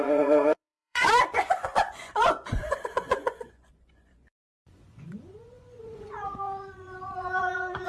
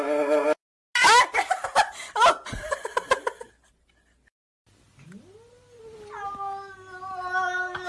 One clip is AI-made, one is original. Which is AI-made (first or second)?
first